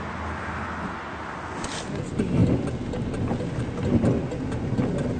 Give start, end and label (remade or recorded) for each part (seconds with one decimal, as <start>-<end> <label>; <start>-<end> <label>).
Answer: 0.0-5.2 recorded